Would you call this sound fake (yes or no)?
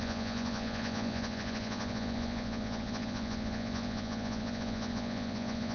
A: yes